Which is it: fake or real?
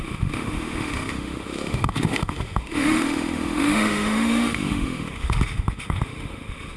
fake